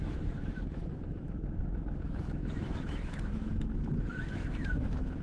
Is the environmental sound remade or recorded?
remade